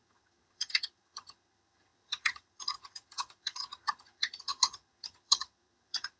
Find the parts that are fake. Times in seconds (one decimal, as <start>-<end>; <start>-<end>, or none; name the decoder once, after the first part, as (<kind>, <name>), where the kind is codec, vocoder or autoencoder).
0.0-6.2 (vocoder, HiFi-GAN)